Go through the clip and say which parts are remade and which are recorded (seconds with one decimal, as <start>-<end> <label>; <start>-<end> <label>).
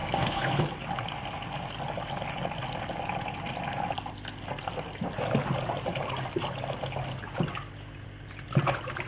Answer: 0.0-0.6 remade; 0.6-9.1 recorded